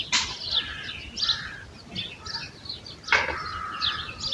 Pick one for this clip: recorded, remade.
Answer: recorded